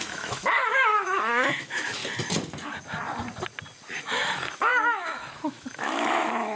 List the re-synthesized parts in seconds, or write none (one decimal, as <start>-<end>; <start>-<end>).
0.0-2.0; 4.0-6.6